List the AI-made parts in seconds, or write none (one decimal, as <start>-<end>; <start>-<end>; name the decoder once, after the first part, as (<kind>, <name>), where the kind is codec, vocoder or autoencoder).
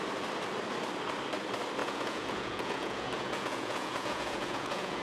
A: 1.8-5.0 (vocoder, Vocos)